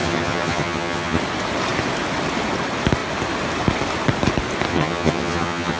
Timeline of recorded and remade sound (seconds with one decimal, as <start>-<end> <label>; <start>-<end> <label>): 0.0-1.2 remade; 1.2-4.7 recorded; 4.7-5.8 remade